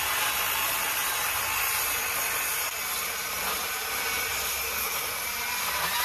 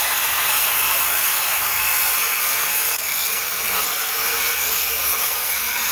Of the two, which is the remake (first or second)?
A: second